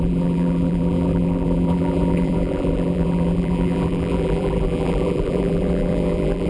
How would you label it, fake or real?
fake